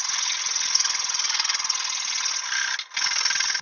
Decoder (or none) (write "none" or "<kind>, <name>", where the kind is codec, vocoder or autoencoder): none